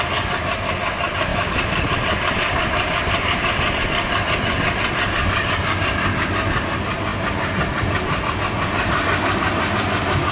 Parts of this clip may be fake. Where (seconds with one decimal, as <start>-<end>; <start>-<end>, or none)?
1.3-3.7